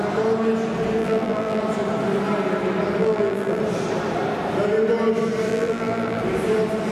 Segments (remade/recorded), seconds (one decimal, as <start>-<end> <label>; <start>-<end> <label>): 0.0-1.0 recorded; 1.0-1.6 remade; 1.6-3.0 recorded; 3.0-3.6 remade; 3.6-5.5 recorded; 5.5-6.2 remade; 6.2-6.9 recorded